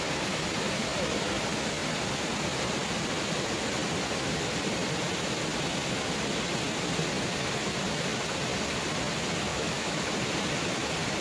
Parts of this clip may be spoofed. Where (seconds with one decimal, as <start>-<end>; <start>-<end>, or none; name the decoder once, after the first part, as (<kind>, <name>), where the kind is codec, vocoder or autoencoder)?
9.5-10.1 (autoencoder, DAC-VAE)